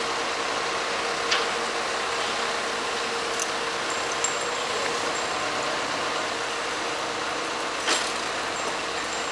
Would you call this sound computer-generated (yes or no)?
no